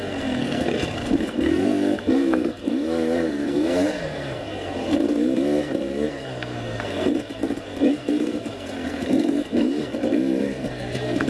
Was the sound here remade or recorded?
remade